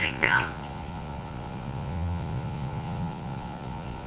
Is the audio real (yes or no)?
no